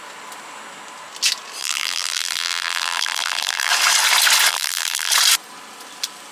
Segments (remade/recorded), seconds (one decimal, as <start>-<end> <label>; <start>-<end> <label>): 0.0-1.6 recorded; 1.6-3.7 remade; 3.7-4.5 recorded; 4.5-5.1 remade; 5.1-6.3 recorded